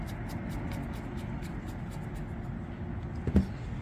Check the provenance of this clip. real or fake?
real